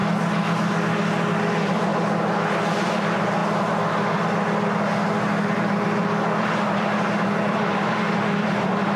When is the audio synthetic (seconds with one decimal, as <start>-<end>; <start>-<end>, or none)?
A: 1.3-1.9; 2.5-3.4; 6.4-9.0